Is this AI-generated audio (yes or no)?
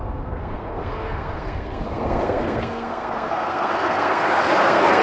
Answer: yes